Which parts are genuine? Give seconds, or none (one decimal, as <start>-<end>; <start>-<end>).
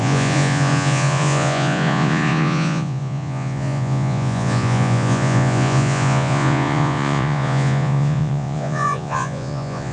none